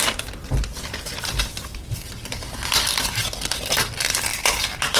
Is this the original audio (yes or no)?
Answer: no